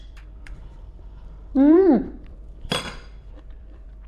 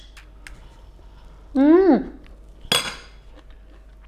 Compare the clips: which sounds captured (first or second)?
second